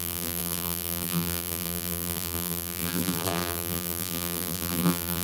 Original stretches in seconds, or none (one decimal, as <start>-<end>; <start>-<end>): none